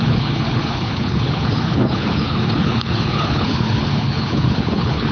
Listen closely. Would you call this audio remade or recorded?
remade